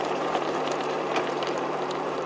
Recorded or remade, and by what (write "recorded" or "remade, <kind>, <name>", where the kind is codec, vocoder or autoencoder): remade, vocoder, BigVGAN v2